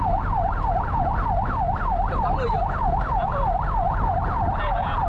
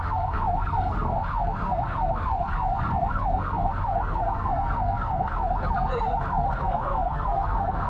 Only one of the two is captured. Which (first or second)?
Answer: first